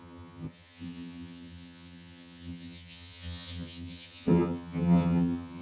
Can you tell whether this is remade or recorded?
remade